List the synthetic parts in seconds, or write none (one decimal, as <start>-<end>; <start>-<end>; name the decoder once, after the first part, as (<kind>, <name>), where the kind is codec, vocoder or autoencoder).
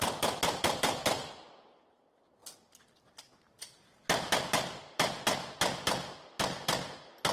none